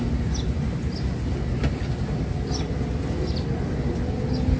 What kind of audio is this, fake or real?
real